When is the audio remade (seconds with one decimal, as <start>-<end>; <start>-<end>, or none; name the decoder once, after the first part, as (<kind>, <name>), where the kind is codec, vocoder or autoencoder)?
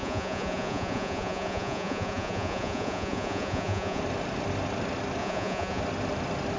0.0-4.0 (vocoder, Vocos); 5.2-5.8